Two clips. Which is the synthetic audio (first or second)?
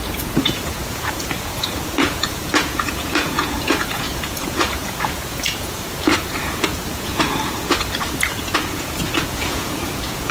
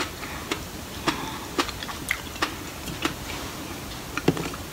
first